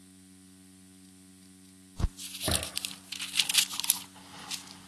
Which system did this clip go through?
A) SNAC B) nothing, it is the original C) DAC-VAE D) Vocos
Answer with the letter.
B